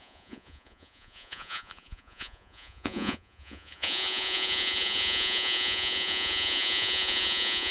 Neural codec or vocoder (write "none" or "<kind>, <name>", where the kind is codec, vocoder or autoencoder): vocoder, Vocos